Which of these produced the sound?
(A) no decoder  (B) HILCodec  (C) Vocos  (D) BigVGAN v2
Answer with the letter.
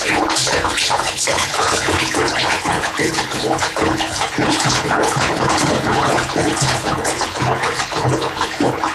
B